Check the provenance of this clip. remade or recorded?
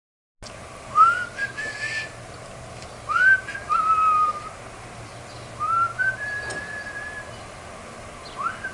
recorded